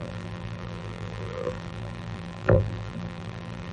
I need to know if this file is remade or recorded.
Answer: remade